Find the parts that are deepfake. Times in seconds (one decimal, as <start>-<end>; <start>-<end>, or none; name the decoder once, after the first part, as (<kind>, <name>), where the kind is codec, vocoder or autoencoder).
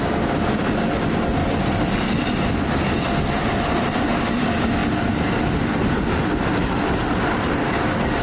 1.4-2.6 (vocoder, BigVGAN v2); 6.6-8.2